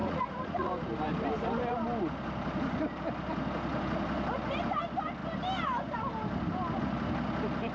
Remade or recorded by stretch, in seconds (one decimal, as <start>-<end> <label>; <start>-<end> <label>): 0.0-0.7 remade; 0.7-7.7 recorded